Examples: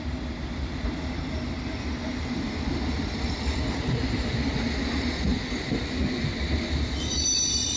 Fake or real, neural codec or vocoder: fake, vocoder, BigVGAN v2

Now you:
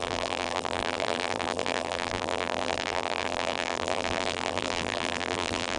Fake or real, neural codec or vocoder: fake, vocoder, BigVGAN v2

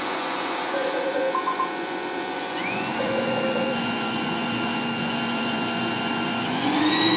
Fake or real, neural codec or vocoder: fake, vocoder, Vocos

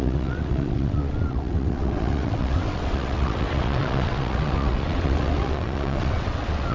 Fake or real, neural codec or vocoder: fake, vocoder, WaveNeXt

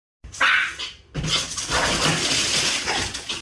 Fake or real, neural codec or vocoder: real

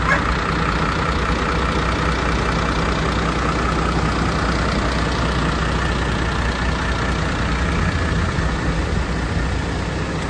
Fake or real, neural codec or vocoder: real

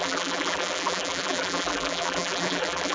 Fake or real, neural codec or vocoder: fake, vocoder, BigVGAN v2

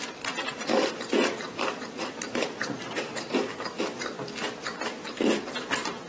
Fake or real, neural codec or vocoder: fake, vocoder, BigVGAN v2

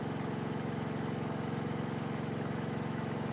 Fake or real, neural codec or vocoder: fake, autoencoder, DAC-VAE